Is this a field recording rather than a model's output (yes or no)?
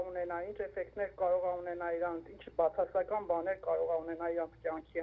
yes